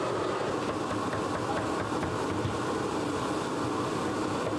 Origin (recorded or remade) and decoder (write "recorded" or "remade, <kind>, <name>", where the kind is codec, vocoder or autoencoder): recorded